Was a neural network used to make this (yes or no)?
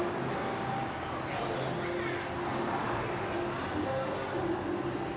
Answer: no